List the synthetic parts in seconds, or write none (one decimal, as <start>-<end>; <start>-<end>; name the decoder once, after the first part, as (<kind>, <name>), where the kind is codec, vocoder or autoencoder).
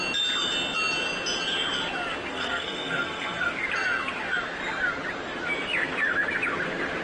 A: 2.3-3.5 (codec, SNAC)